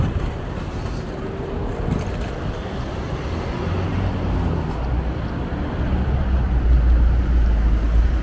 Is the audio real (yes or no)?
yes